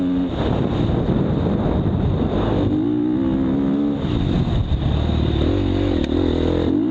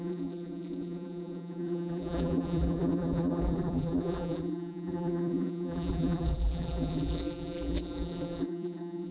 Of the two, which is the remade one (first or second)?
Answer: second